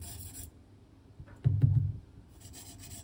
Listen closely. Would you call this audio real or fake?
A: real